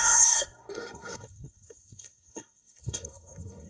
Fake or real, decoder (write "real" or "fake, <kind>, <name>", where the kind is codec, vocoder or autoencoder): fake, codec, SNAC